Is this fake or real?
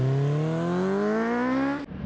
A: real